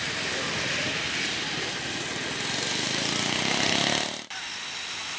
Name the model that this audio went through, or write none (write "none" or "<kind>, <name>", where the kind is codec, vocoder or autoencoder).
none